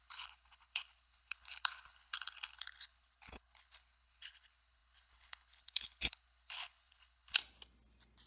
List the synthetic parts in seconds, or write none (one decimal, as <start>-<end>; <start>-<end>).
0.0-7.4